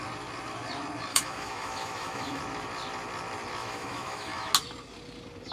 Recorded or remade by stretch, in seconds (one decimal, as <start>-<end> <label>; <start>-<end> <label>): 0.0-1.1 recorded; 1.1-2.4 remade; 2.4-3.6 recorded; 3.6-4.5 remade; 4.5-5.5 recorded